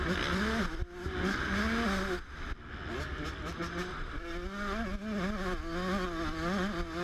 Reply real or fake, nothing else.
real